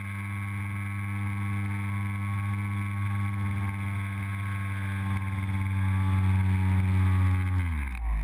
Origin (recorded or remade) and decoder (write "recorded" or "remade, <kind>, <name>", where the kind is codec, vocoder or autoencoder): recorded